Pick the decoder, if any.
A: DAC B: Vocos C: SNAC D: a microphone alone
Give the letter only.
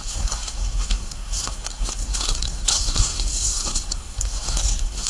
C